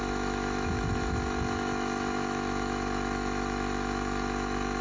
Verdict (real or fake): fake